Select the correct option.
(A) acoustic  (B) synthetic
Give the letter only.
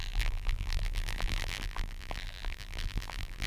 B